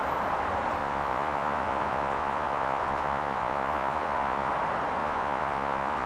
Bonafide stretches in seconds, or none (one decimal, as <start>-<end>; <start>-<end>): 0.0-0.8; 4.5-5.0

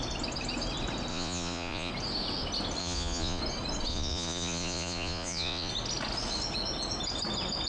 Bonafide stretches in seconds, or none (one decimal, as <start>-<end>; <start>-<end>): 0.0-1.1; 1.9-2.8; 3.4-3.9; 5.7-7.7